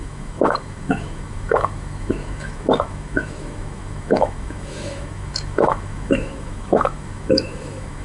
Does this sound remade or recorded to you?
remade